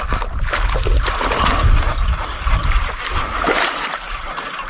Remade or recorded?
recorded